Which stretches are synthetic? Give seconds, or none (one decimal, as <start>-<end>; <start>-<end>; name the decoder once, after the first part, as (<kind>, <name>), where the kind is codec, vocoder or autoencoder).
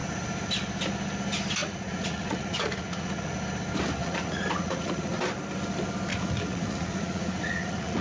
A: 1.6-3.3 (vocoder, Vocos); 4.0-5.2; 6.1-8.0